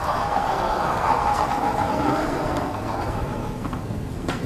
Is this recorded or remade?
remade